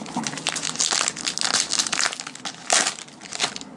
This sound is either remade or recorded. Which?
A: recorded